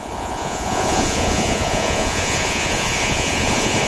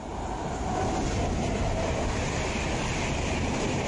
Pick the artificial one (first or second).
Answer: first